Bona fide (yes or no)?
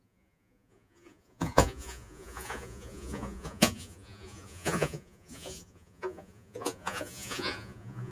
no